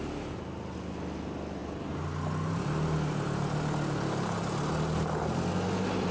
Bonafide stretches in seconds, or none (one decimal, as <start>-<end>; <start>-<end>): 0.0-6.1